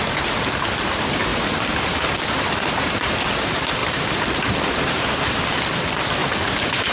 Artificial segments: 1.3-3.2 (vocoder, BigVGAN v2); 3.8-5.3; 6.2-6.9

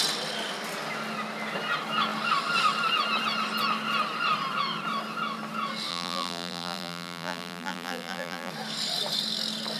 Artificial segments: 5.9-8.5 (vocoder, BigVGAN v2)

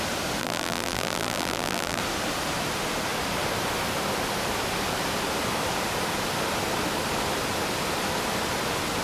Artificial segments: 0.4-2.0 (vocoder, BigVGAN v2)

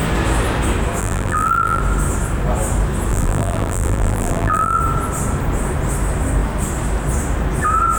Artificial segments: 1.0-1.8 (vocoder, BigVGAN v2); 3.1-4.8

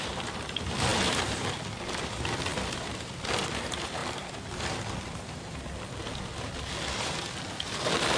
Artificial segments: 0.0-4.0 (vocoder, BigVGAN v2); 6.8-8.2